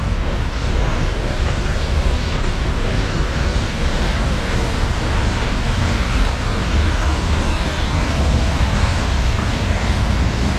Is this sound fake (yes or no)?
yes